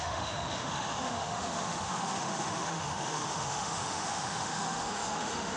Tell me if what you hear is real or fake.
fake